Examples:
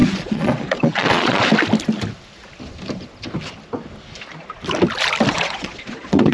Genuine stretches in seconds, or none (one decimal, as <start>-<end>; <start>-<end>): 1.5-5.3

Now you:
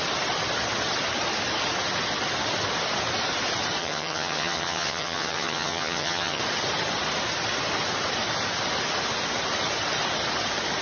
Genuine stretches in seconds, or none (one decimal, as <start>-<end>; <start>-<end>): 0.0-3.8; 6.4-10.8

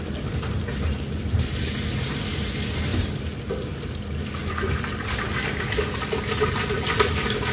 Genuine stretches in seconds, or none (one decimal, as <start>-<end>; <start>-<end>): 0.0-7.5